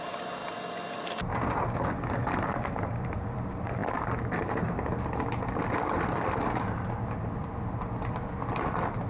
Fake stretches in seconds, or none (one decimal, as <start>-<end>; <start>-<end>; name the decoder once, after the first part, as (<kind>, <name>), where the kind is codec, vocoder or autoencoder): 0.0-0.4 (vocoder, BigVGAN v2); 2.1-3.8; 6.0-9.1